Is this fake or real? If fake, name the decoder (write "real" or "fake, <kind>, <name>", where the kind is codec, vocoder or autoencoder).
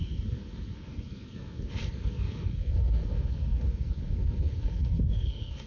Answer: fake, codec, SNAC